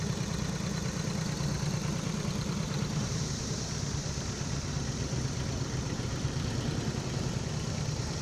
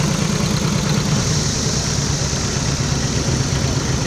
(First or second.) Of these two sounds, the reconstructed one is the first